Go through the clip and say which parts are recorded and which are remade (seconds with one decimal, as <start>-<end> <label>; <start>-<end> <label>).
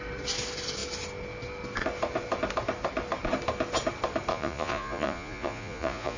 0.0-4.3 recorded; 4.3-6.2 remade